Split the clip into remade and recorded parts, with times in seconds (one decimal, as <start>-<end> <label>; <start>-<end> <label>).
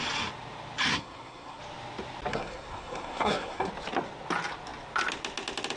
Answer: 0.0-0.9 recorded; 0.9-1.6 remade; 1.6-2.3 recorded; 2.3-3.7 remade; 3.7-5.8 recorded